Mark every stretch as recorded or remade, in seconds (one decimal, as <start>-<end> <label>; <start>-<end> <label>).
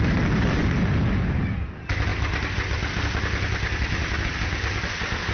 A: 0.0-5.3 recorded